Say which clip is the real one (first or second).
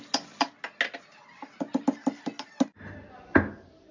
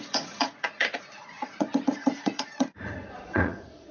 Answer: first